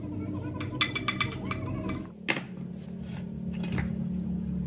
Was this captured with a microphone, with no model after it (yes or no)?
yes